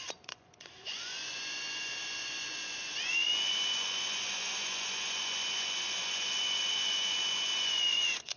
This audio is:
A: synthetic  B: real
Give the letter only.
A